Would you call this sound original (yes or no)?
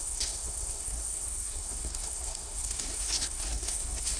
no